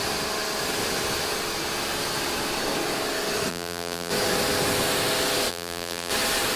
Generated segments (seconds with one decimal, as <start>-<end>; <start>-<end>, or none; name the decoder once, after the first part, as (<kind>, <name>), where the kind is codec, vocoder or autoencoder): 3.5-4.1 (vocoder, BigVGAN v2); 5.5-6.1